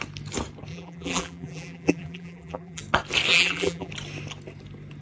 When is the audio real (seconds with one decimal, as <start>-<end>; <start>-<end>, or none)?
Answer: 0.0-0.7; 2.8-3.3; 3.9-5.0